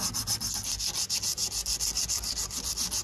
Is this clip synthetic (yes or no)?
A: no